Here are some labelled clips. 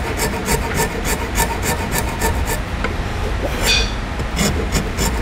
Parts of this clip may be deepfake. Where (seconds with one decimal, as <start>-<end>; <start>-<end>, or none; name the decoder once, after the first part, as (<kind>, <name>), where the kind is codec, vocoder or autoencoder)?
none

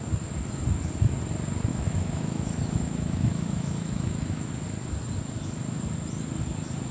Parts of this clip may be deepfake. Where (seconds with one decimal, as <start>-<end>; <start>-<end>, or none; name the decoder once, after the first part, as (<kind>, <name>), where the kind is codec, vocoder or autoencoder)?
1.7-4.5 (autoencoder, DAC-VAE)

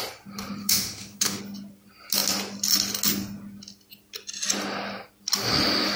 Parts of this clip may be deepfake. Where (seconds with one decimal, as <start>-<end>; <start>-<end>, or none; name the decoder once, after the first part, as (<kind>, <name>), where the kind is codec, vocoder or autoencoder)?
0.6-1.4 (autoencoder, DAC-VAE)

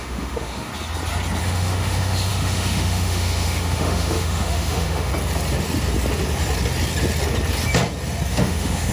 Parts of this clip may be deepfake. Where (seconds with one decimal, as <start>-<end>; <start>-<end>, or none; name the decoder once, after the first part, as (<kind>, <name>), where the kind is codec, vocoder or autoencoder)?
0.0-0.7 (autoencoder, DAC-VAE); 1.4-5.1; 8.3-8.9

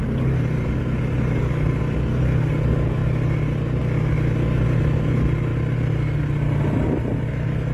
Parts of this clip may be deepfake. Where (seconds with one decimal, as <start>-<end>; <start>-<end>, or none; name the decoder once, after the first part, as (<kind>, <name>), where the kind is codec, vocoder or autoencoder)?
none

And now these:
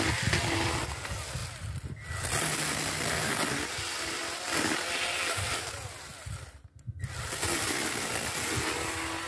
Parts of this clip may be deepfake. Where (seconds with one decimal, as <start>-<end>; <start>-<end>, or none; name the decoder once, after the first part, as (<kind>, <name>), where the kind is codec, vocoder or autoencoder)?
none